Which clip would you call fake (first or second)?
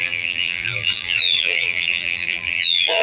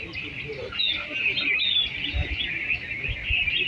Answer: first